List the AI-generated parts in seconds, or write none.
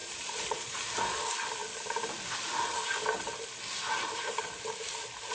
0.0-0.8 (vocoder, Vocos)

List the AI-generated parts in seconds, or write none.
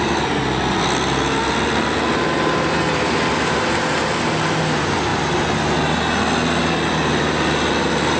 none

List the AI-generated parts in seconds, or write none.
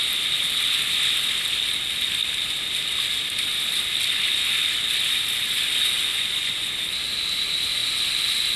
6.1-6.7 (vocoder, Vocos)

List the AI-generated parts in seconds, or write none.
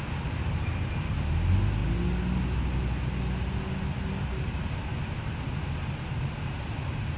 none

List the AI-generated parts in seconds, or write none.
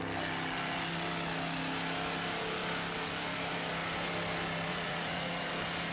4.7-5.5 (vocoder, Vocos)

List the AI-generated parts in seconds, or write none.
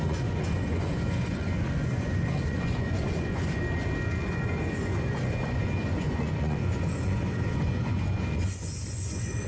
0.0-3.6 (vocoder, Vocos); 4.2-9.5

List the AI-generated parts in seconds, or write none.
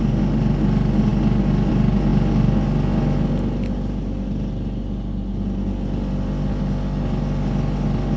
none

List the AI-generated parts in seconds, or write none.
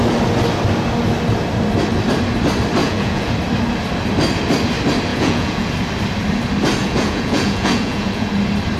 2.8-3.3 (vocoder, Vocos); 5.1-5.7; 6.8-8.3